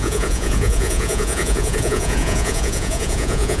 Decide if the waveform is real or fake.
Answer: fake